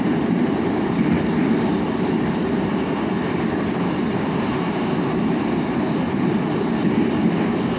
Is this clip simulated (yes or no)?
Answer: no